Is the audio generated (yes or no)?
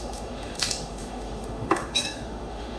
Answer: yes